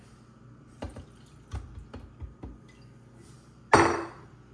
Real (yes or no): yes